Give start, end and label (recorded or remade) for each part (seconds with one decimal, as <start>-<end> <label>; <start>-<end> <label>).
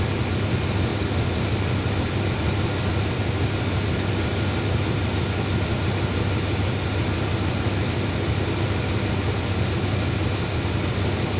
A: 0.0-11.4 recorded